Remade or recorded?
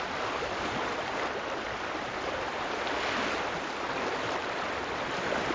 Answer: recorded